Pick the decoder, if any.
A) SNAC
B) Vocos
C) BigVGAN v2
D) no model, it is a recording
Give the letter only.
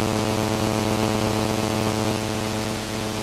B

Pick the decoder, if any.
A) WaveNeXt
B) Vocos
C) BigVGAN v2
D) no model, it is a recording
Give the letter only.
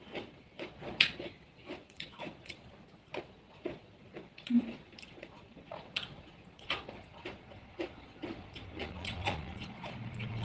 B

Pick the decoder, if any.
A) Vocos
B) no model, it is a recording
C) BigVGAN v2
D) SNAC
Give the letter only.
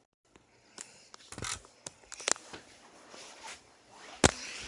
B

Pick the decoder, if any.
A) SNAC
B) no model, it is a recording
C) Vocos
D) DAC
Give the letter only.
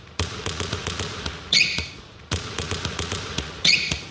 C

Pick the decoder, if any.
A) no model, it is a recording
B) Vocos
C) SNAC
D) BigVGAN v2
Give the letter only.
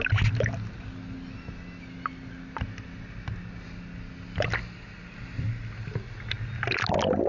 A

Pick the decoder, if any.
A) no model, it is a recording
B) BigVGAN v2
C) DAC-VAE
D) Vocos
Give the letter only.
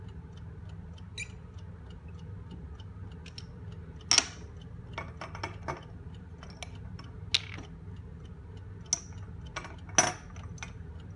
A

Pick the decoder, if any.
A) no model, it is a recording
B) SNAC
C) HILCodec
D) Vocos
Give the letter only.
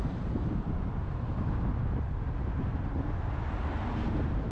A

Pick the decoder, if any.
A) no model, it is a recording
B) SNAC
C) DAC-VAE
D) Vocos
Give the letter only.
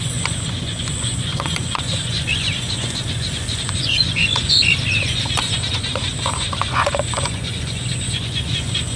D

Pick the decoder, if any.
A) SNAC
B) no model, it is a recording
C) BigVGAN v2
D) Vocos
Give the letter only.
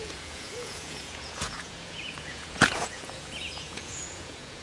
D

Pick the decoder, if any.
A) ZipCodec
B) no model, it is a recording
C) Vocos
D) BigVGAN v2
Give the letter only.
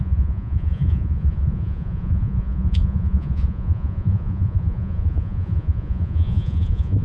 C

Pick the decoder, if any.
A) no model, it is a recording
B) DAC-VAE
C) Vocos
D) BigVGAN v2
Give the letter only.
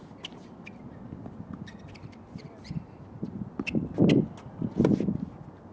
A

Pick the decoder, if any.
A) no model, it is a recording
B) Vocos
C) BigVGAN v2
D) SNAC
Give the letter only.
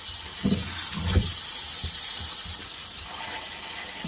A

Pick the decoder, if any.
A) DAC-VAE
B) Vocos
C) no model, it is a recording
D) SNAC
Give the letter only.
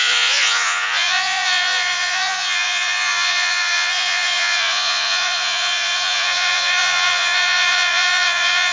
B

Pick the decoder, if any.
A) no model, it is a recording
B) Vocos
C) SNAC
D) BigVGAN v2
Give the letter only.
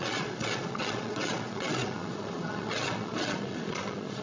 B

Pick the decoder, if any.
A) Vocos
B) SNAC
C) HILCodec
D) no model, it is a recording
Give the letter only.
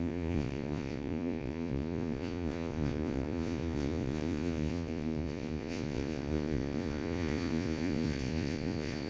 A